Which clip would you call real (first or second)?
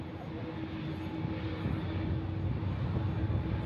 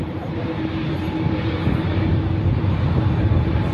first